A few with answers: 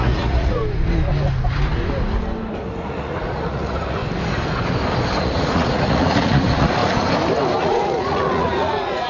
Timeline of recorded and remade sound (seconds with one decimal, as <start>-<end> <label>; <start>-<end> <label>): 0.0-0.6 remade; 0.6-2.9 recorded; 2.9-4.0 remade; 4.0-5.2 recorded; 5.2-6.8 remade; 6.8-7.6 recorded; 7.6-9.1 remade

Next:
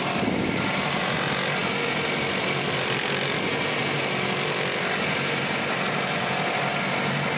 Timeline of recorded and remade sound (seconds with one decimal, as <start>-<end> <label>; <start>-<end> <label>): 0.0-7.4 recorded

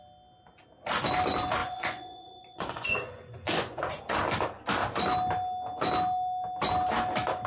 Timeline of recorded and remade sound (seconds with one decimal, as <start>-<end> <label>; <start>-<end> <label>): 0.0-1.6 recorded; 1.6-4.0 remade; 4.0-7.5 recorded

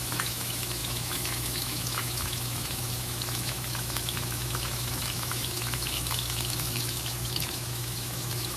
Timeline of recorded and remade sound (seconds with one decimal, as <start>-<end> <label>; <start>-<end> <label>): 0.0-8.6 remade

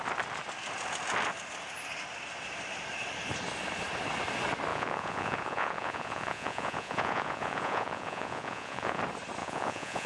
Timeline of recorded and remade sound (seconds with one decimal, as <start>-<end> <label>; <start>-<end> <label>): 0.0-4.7 recorded; 4.7-9.0 remade; 9.0-9.4 recorded; 9.4-10.1 remade

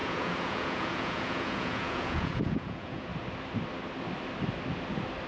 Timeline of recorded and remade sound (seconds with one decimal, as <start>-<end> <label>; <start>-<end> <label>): 0.0-3.1 remade; 3.1-5.3 recorded

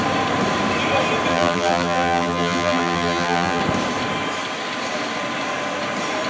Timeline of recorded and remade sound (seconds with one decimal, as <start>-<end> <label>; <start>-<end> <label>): 0.0-1.3 recorded; 1.3-3.6 remade; 3.6-6.3 recorded